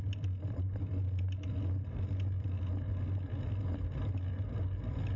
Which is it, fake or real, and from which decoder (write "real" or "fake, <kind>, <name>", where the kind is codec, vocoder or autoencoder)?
real